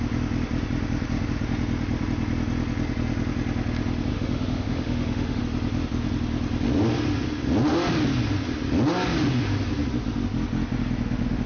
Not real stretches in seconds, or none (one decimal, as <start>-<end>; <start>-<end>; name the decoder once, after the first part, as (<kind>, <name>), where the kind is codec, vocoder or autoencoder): 4.1-5.4 (autoencoder, DAC-VAE)